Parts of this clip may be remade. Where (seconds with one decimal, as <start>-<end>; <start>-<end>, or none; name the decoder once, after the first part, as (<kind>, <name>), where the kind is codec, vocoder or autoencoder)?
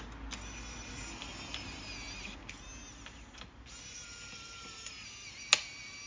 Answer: none